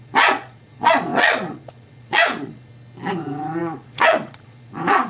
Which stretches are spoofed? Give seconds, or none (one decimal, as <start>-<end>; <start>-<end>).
0.0-2.7; 3.6-5.1